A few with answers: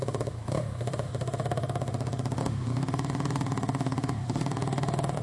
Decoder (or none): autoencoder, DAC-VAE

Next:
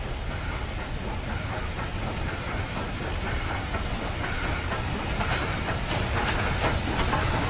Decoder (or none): none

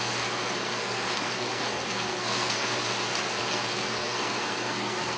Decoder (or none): codec, SNAC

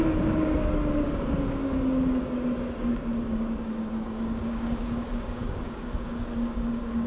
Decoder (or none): codec, DAC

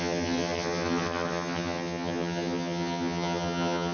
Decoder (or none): vocoder, HiFi-GAN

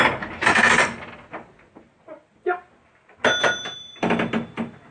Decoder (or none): none